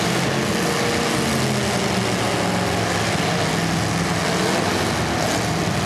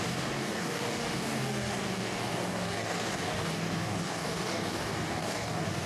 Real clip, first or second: first